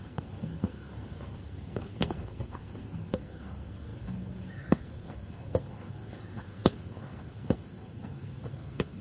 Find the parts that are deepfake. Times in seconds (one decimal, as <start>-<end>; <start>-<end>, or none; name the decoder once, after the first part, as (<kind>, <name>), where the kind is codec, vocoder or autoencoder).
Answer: 0.0-9.0 (codec, SNAC)